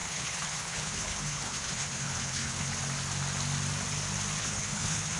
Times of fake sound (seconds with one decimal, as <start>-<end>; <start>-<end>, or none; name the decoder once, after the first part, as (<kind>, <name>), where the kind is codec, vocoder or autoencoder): 0.0-2.7 (codec, HILCodec); 4.4-5.2

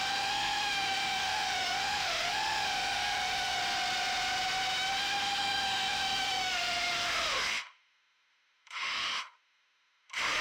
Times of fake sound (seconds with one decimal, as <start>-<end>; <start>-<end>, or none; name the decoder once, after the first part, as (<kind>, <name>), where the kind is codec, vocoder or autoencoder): 0.0-3.6 (autoencoder, DAC-VAE); 5.0-10.4